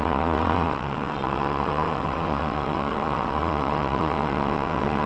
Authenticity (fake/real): fake